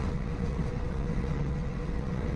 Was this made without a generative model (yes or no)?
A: no